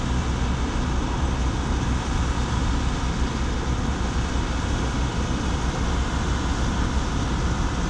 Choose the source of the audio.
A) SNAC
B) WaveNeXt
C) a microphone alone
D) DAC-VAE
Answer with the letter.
C